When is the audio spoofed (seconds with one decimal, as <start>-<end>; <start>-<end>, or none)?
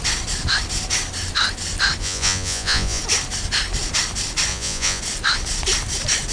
2.0-3.0; 4.5-5.0